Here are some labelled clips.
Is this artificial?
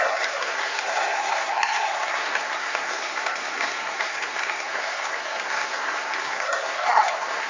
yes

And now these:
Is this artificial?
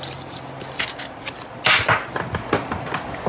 no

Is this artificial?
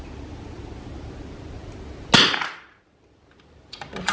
no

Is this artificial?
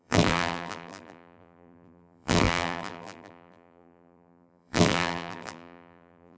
yes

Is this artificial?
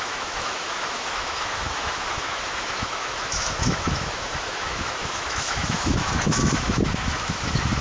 yes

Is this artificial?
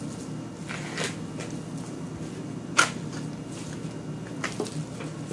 no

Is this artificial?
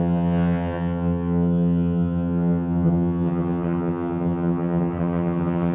yes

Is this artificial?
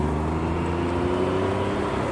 no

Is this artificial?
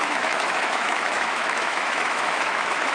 yes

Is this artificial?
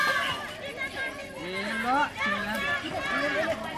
no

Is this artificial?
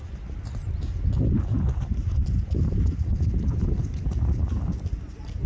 no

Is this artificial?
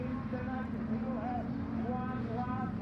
no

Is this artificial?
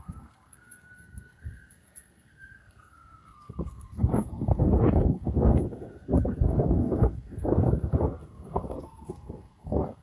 yes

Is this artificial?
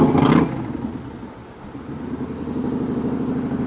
no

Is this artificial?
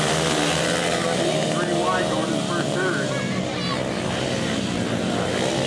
no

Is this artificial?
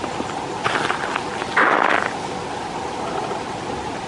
no